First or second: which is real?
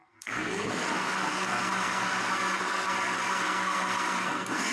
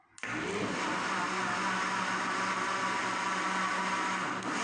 second